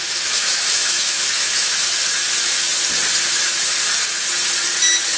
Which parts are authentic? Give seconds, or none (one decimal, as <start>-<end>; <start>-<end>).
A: 1.8-5.2